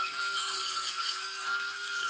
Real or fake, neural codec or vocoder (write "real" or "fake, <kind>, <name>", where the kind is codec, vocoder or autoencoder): fake, codec, SNAC